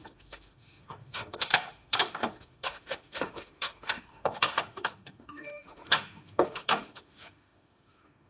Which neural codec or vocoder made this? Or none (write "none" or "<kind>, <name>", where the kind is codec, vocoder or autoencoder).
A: autoencoder, DAC-VAE